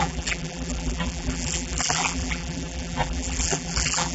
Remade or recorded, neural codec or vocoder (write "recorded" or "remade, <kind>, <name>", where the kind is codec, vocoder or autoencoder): remade, vocoder, BigVGAN v2